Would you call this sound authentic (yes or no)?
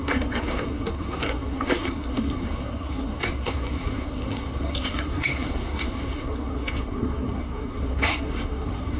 no